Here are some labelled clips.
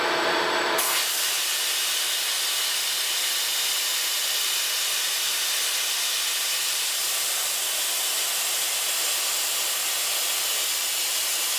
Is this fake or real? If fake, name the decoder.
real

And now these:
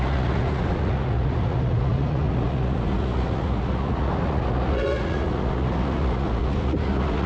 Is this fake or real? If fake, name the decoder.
fake, vocoder, Vocos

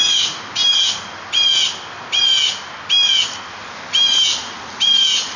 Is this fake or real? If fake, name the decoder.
real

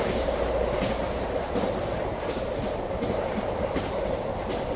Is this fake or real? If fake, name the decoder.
fake, vocoder, BigVGAN v2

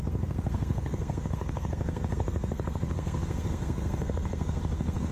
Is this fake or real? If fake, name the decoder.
fake, codec, SNAC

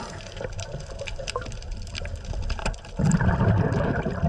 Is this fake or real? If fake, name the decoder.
real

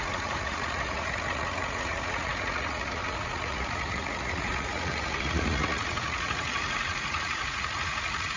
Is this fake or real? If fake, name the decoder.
fake, vocoder, Vocos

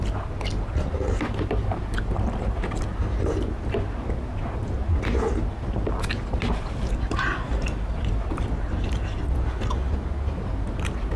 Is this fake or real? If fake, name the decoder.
real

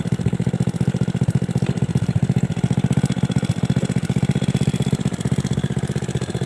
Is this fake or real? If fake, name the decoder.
real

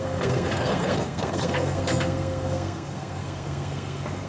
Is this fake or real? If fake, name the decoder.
fake, codec, SNAC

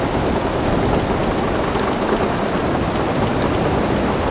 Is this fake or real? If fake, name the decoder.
real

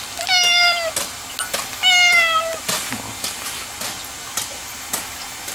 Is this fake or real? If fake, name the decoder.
real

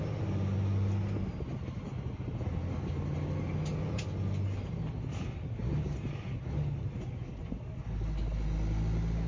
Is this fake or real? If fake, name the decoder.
real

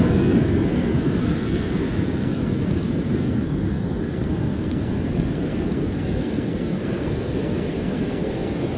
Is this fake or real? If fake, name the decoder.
fake, codec, SNAC